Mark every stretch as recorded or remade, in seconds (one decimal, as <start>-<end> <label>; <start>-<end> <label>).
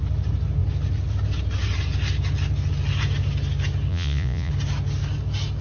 0.0-3.9 recorded; 3.9-4.5 remade; 4.5-5.6 recorded